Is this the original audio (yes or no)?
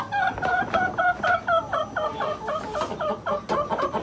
yes